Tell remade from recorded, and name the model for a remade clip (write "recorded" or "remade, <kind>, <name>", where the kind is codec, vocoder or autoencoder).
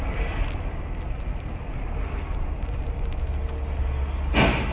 recorded